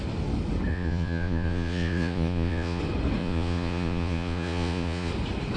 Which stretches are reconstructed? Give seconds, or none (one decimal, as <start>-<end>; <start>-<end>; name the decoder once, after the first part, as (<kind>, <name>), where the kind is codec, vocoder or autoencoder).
0.7-2.8 (vocoder, Vocos); 3.2-5.1